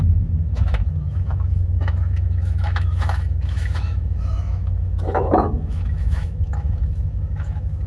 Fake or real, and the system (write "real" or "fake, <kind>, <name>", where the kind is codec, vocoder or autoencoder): fake, autoencoder, DAC-VAE